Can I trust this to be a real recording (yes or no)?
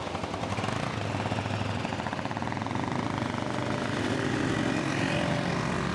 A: yes